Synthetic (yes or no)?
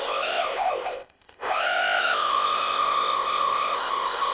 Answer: yes